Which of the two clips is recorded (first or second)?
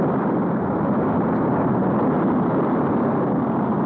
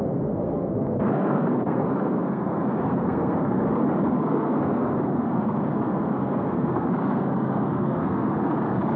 first